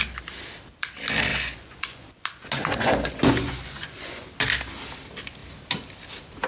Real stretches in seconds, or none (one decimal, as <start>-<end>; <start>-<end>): 0.0-1.3; 4.3-6.5